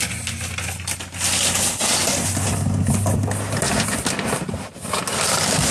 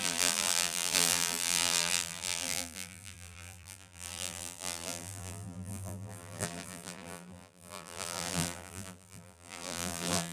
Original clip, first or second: first